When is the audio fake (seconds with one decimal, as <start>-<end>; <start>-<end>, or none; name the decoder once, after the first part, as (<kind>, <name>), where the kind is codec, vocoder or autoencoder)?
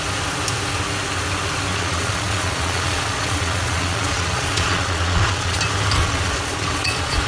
1.7-5.6 (vocoder, Vocos); 6.0-7.3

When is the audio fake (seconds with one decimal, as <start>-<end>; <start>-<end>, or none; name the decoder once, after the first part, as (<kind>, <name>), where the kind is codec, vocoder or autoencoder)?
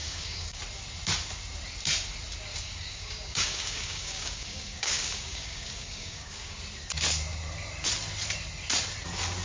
0.0-0.6 (codec, DAC); 2.5-6.6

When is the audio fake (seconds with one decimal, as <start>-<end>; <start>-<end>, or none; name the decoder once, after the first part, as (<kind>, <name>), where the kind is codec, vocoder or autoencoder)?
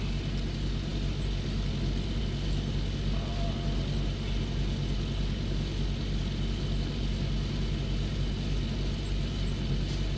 none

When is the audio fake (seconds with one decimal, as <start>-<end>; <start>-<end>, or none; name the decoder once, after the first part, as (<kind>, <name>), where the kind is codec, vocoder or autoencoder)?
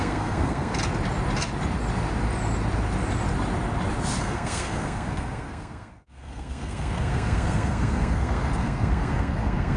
0.0-0.7 (codec, SNAC); 4.2-9.8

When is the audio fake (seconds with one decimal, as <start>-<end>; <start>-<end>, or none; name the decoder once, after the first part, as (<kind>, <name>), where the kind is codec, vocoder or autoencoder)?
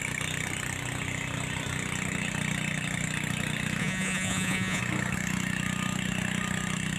3.8-4.8 (vocoder, Vocos)